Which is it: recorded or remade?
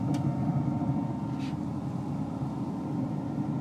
recorded